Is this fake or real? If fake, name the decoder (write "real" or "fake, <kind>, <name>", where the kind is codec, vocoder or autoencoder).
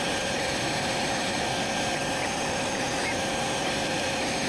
fake, vocoder, BigVGAN v2